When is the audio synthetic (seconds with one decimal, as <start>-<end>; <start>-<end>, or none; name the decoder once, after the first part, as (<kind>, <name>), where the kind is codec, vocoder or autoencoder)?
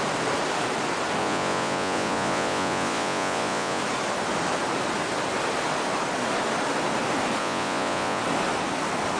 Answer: 1.2-3.8 (vocoder, Vocos); 7.4-8.2